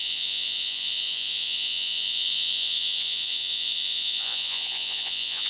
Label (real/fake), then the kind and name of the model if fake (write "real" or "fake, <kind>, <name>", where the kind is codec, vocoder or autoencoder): fake, vocoder, Vocos